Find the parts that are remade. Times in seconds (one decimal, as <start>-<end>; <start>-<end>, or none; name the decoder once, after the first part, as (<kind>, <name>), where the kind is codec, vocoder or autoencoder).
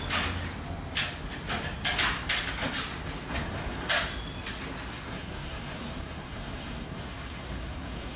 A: 3.3-3.9 (codec, SNAC); 4.9-8.2